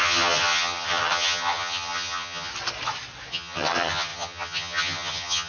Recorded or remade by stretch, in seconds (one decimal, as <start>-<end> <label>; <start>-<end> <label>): 0.0-2.5 remade; 2.5-3.3 recorded; 3.3-5.5 remade

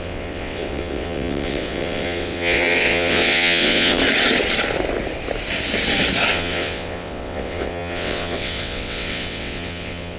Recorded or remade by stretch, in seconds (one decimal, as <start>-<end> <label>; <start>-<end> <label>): 0.0-4.0 remade; 4.0-6.3 recorded; 6.3-10.2 remade